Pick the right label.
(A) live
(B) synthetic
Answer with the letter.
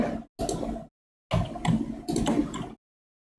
A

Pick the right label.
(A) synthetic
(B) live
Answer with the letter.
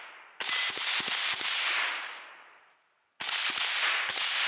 B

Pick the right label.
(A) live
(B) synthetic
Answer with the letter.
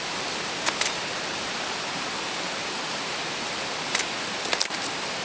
B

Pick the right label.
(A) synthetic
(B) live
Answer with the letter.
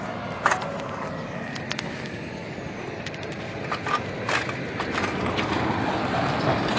B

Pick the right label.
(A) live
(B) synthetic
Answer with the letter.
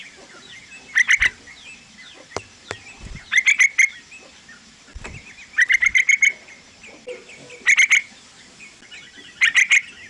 A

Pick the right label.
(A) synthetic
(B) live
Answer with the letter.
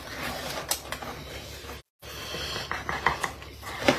B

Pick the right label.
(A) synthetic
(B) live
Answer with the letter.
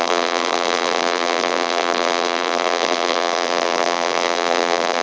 A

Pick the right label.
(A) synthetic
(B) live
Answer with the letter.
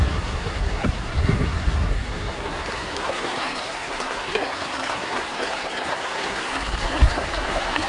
A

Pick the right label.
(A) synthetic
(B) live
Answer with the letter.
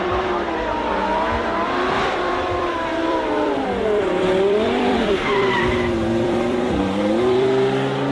A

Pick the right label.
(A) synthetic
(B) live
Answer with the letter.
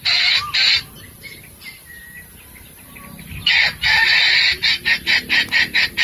A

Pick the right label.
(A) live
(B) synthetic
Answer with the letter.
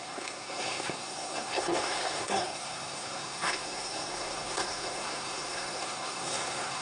B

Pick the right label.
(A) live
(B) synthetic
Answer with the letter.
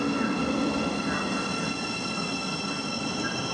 A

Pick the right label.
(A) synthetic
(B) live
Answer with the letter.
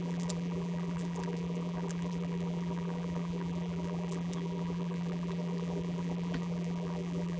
A